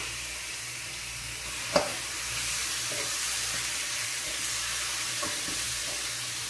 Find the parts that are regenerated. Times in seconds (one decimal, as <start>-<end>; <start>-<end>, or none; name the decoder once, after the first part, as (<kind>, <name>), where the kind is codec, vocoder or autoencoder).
0.0-6.5 (vocoder, BigVGAN v2)